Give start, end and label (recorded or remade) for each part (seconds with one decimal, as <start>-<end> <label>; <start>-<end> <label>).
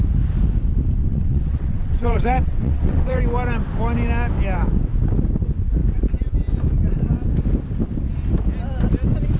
0.0-1.0 recorded; 1.0-3.2 remade; 3.2-9.4 recorded